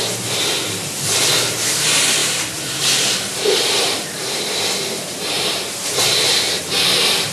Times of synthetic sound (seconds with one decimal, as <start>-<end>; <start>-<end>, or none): 2.2-6.6